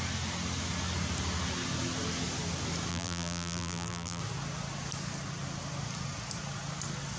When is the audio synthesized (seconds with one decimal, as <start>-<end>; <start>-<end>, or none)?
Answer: 2.9-4.2